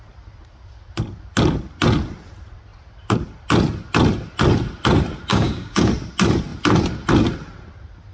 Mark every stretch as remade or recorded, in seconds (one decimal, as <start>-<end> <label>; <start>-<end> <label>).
0.0-5.3 recorded; 5.3-5.9 remade; 5.9-8.1 recorded